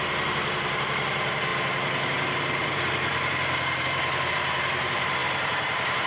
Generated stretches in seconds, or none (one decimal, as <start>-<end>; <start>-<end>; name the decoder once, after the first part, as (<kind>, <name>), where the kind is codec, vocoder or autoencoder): 0.0-6.1 (vocoder, BigVGAN v2)